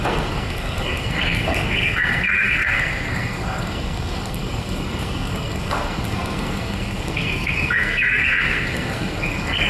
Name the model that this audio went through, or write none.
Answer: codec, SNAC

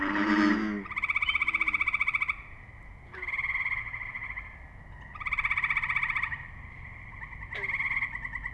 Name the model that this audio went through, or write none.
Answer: none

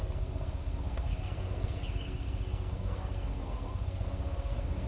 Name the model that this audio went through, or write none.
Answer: codec, SNAC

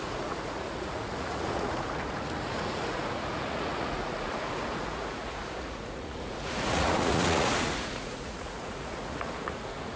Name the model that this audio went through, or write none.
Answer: vocoder, Vocos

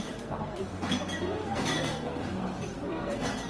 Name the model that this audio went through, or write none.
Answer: codec, SNAC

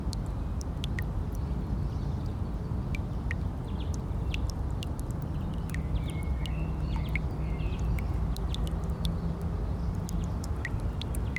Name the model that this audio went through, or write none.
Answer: none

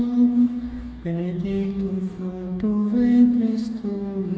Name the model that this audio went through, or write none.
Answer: codec, DAC